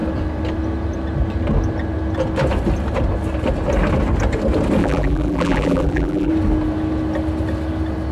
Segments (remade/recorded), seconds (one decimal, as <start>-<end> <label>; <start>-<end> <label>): 0.0-4.8 recorded; 4.8-6.3 remade; 6.3-8.1 recorded